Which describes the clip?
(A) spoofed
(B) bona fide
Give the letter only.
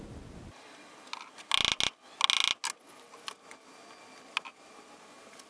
B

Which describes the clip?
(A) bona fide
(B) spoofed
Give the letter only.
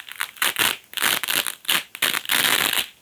A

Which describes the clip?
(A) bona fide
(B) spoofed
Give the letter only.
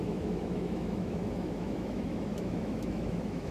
B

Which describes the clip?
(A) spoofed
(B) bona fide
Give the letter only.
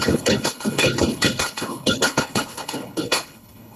A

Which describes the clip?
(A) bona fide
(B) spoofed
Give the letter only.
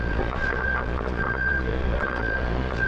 B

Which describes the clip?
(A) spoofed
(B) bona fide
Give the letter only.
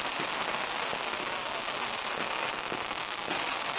B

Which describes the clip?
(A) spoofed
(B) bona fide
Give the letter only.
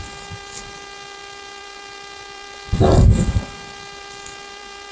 A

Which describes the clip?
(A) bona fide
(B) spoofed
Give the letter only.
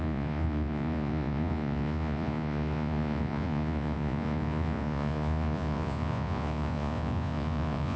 B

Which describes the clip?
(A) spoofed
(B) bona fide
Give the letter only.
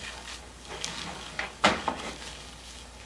A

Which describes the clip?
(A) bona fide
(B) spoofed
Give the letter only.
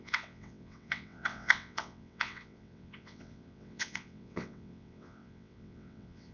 B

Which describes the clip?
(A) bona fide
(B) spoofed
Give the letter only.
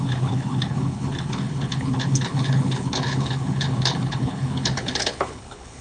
B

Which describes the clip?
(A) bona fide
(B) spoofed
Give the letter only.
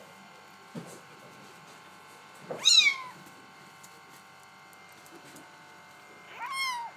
A